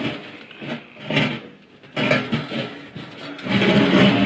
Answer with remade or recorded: recorded